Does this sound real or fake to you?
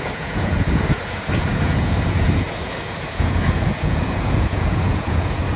fake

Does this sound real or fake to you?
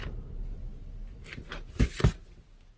real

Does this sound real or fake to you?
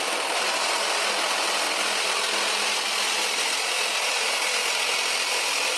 real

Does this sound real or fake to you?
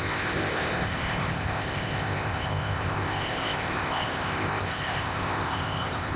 fake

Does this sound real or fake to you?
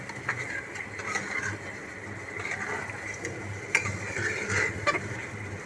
real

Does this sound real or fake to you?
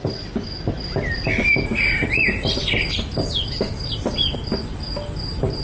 real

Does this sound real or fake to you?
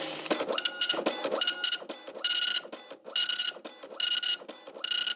real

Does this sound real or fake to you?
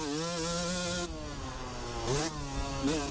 real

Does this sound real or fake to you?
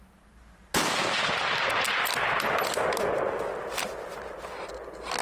real